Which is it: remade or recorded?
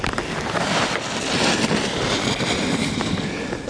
recorded